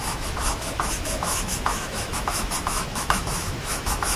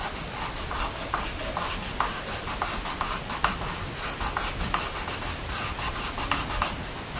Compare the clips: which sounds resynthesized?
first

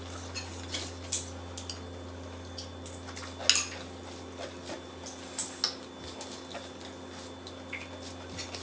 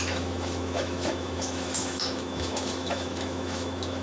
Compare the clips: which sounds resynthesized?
second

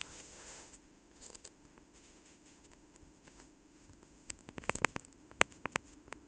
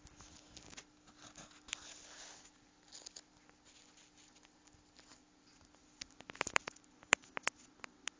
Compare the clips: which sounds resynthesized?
first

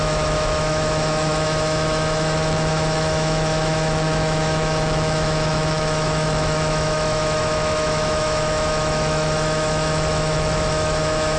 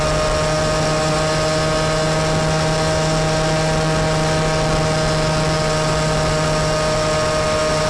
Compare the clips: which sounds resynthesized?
first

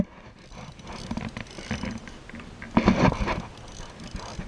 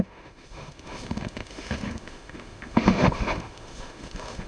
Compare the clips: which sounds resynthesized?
second